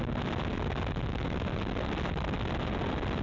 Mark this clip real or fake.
real